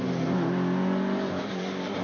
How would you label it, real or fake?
real